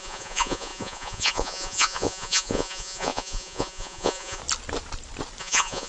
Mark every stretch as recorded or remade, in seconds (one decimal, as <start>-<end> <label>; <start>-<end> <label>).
0.0-4.4 remade; 4.4-5.4 recorded; 5.4-5.9 remade